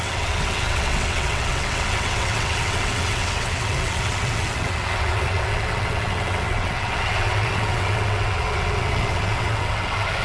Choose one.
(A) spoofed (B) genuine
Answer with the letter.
A